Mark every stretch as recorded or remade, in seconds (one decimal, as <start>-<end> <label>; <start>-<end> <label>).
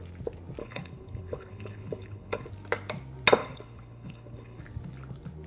0.0-0.6 recorded; 0.6-2.5 remade; 2.5-3.4 recorded; 3.4-4.6 remade; 4.6-5.5 recorded